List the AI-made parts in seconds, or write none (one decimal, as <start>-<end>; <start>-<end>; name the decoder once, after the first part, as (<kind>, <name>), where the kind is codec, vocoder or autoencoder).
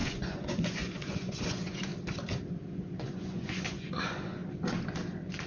0.0-1.9 (vocoder, Vocos); 3.0-4.4